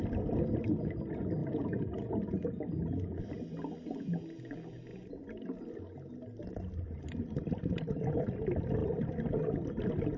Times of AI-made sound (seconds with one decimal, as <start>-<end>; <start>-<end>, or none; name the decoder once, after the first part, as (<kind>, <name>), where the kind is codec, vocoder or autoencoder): 1.4-3.2 (vocoder, Vocos)